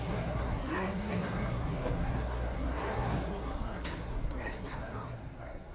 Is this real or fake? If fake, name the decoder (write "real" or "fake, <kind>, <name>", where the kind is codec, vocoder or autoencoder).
fake, codec, SNAC